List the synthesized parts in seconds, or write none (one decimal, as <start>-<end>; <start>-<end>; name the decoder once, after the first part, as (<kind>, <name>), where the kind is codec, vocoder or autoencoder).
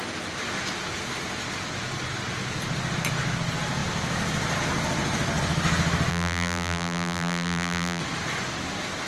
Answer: 6.1-8.0 (vocoder, BigVGAN v2)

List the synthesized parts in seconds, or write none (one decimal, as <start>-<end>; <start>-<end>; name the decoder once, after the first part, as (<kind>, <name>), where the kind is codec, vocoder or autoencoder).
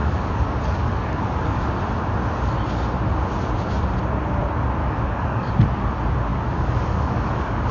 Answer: 0.0-1.7 (codec, DAC); 4.8-5.5; 6.3-7.7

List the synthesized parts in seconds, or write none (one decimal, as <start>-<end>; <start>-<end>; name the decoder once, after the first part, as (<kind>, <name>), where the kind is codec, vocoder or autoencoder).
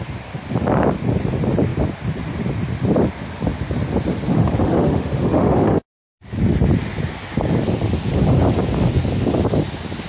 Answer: 4.3-5.8 (autoencoder, DAC-VAE)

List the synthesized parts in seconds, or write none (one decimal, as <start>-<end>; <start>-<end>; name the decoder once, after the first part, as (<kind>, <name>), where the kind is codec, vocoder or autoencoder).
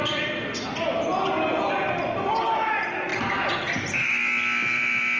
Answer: none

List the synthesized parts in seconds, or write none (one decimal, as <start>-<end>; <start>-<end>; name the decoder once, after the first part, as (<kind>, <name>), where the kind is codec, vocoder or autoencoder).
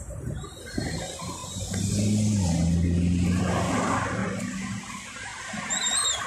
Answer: none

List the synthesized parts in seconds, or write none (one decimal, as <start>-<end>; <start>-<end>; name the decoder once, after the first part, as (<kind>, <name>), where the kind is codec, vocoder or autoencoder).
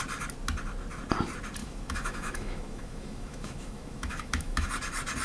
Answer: 1.6-4.7 (autoencoder, DAC-VAE)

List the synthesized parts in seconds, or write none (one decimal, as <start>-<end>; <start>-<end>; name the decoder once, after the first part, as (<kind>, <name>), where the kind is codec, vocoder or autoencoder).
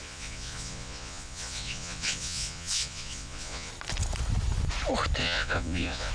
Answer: 0.0-3.7 (vocoder, Vocos); 5.2-6.1